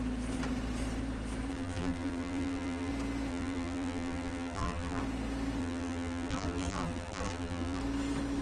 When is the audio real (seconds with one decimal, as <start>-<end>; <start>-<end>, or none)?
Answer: 0.0-1.5; 2.9-3.3; 5.0-5.6; 7.8-8.4